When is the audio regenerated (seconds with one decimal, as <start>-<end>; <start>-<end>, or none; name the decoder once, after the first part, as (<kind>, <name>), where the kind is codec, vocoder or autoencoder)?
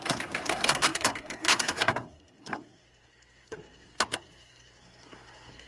0.0-5.7 (codec, SNAC)